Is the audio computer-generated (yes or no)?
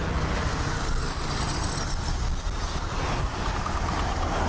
no